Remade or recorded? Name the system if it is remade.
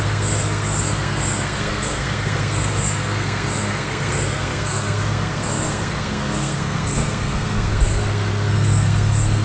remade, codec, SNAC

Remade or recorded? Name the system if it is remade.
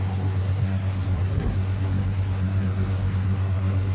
remade, codec, SNAC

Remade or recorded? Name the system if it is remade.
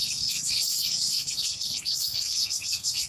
remade, codec, SNAC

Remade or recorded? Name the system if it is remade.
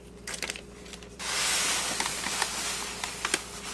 recorded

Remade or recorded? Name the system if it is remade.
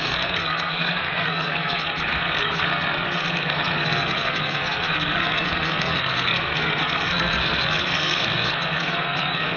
remade, codec, SNAC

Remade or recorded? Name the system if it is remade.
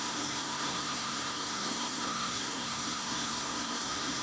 remade, codec, SNAC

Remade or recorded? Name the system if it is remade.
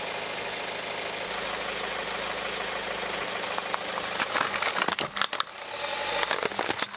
recorded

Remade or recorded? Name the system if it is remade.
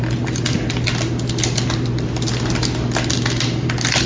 recorded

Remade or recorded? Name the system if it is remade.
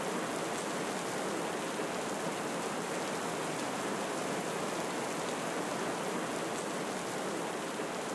recorded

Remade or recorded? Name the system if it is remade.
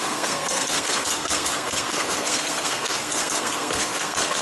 remade, codec, SNAC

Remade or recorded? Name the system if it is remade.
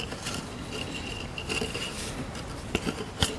recorded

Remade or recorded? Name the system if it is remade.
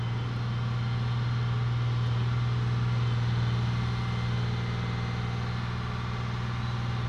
recorded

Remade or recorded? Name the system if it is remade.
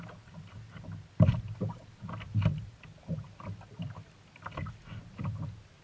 recorded